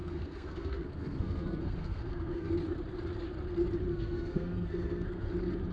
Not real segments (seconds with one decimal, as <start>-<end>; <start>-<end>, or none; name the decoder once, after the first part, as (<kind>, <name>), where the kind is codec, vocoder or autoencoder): 0.0-2.5 (codec, SNAC); 3.9-5.3